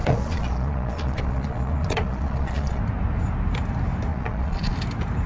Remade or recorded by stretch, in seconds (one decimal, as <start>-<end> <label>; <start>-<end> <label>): 0.0-2.8 remade; 2.8-4.1 recorded; 4.1-4.7 remade; 4.7-5.3 recorded